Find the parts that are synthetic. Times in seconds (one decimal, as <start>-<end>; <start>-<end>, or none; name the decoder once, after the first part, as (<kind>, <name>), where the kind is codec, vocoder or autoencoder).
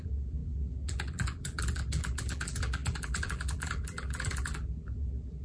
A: 0.0-5.4 (vocoder, BigVGAN v2)